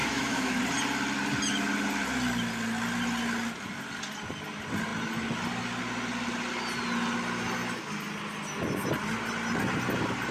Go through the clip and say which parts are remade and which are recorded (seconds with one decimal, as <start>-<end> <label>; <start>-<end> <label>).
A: 0.0-0.6 remade; 0.6-10.3 recorded